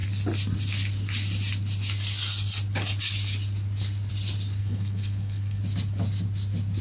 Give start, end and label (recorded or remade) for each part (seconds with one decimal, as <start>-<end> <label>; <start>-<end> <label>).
0.0-4.6 recorded; 4.6-5.6 remade; 5.6-6.8 recorded